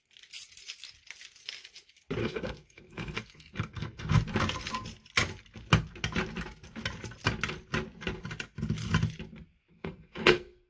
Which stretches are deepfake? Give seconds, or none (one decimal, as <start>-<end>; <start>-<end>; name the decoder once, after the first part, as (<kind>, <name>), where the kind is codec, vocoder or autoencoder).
2.2-4.1 (codec, SNAC); 9.7-10.7